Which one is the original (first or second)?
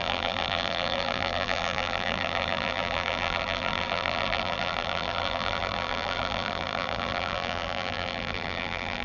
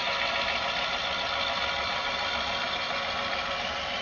second